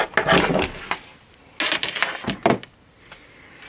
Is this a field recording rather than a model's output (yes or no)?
yes